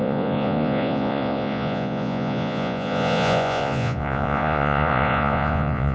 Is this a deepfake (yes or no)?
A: yes